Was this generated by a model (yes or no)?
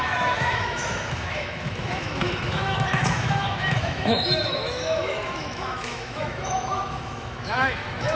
yes